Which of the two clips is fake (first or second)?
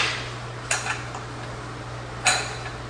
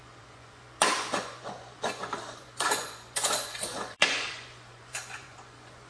second